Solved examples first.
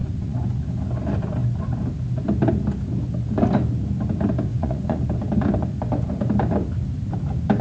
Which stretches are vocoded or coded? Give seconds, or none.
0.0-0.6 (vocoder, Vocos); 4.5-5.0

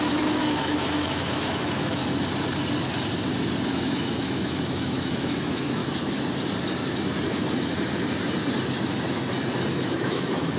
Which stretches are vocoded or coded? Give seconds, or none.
0.0-2.0 (autoencoder, DAC-VAE); 3.7-5.8; 9.7-10.6

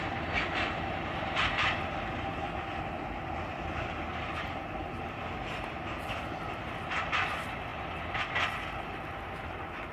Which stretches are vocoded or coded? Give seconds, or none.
none